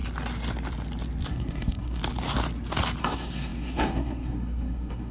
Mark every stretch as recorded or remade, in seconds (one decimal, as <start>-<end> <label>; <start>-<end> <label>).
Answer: 0.0-1.3 recorded; 1.3-2.0 remade; 2.0-3.0 recorded; 3.0-5.1 remade